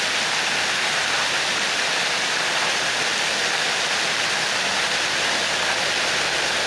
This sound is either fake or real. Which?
real